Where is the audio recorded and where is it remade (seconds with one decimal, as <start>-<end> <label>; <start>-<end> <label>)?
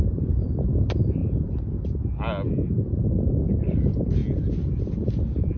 0.0-1.2 remade; 1.2-3.3 recorded; 3.3-4.2 remade; 4.2-5.0 recorded; 5.0-5.6 remade